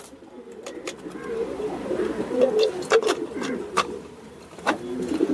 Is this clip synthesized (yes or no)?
yes